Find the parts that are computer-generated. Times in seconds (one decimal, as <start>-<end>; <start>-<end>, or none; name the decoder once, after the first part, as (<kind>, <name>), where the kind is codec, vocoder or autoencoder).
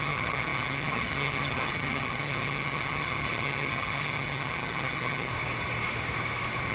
0.0-5.3 (vocoder, HiFi-GAN)